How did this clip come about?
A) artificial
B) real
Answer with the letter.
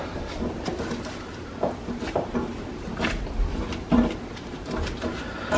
B